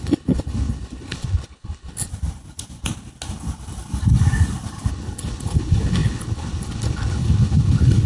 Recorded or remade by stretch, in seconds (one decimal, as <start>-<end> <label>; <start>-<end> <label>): 0.0-2.1 remade; 2.1-4.9 recorded; 4.9-8.1 remade

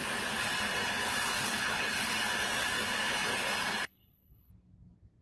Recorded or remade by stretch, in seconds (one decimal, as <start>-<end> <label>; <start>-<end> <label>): 0.0-1.4 recorded; 1.4-2.1 remade; 2.1-3.7 recorded; 3.7-4.5 remade; 4.5-5.2 recorded

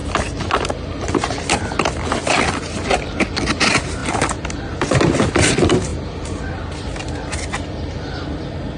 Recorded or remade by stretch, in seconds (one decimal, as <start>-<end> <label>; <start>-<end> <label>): 0.0-8.8 recorded